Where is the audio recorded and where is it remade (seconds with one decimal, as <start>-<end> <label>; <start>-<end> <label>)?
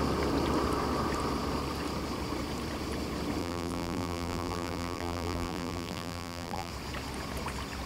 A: 0.0-3.4 recorded; 3.4-6.7 remade; 6.7-7.9 recorded